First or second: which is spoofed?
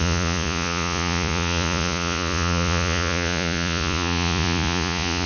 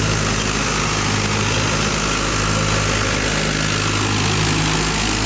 first